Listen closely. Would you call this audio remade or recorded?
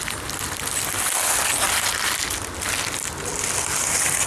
recorded